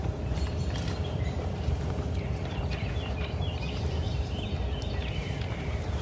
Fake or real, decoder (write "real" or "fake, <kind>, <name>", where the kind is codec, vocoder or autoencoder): fake, vocoder, BigVGAN v2